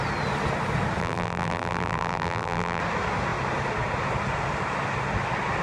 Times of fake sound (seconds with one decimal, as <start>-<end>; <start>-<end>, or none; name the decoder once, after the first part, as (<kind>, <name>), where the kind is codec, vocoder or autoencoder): 1.0-2.8 (vocoder, BigVGAN v2)